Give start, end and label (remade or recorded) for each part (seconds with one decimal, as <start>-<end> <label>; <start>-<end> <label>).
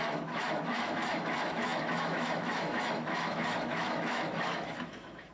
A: 0.0-5.3 remade